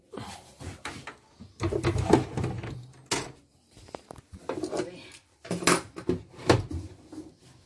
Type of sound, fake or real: real